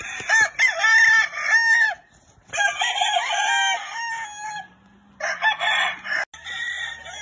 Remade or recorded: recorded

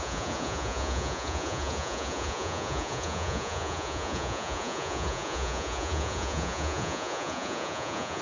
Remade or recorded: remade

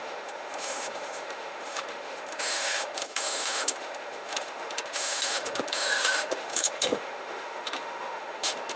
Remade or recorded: remade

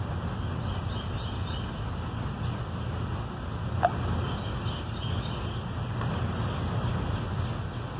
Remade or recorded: recorded